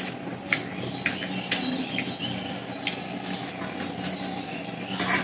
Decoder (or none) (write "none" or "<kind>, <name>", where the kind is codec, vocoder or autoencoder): none